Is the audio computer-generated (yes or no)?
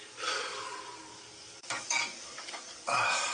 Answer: yes